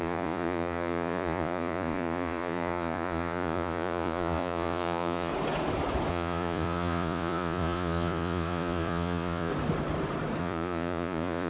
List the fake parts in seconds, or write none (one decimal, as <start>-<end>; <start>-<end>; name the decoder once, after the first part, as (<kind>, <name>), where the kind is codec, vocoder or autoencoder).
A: 0.0-5.3 (vocoder, Vocos); 6.1-9.5; 10.4-11.5